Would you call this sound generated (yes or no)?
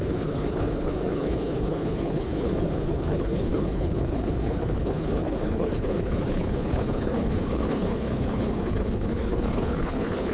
yes